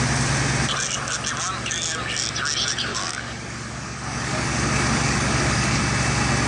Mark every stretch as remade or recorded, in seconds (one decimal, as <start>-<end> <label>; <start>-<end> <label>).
0.0-2.9 recorded; 2.9-5.8 remade; 5.8-6.5 recorded